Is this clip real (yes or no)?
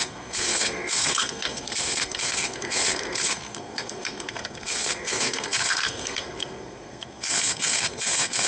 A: no